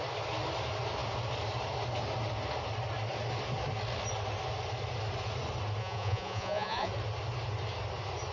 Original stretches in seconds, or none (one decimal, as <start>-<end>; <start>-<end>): 0.0-5.8; 6.9-8.3